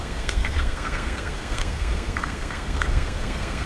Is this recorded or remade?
remade